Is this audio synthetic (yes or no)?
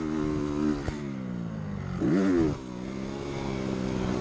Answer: no